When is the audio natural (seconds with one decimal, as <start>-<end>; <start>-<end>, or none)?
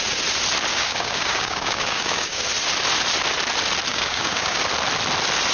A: 0.0-0.7; 2.4-3.9; 4.6-5.5